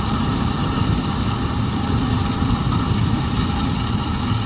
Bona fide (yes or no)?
yes